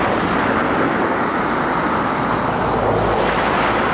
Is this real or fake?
real